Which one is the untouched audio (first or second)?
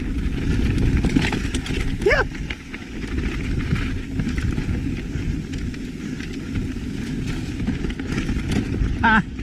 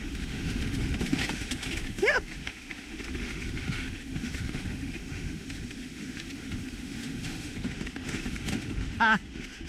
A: first